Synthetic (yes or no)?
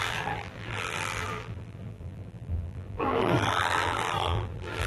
yes